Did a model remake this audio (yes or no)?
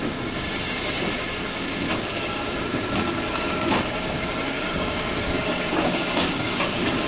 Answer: yes